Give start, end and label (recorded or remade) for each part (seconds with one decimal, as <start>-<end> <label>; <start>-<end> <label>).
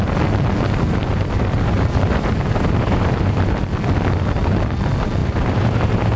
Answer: 0.0-1.0 recorded; 1.0-3.6 remade; 3.6-5.2 recorded; 5.2-6.2 remade